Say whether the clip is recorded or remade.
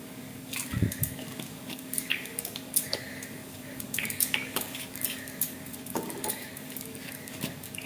remade